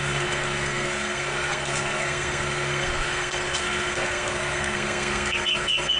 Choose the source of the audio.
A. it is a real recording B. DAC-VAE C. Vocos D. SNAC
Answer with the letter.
D